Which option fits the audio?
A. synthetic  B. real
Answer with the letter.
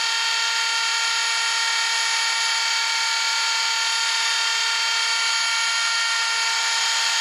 B